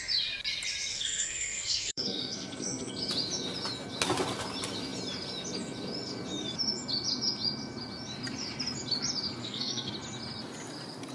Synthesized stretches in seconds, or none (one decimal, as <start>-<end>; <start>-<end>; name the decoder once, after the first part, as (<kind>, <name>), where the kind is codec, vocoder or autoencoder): 0.9-2.9 (codec, SNAC); 9.4-9.9